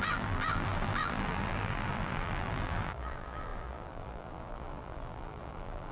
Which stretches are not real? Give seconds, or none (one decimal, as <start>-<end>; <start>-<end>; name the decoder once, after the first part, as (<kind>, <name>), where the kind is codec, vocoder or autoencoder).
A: 0.0-5.9 (vocoder, BigVGAN v2)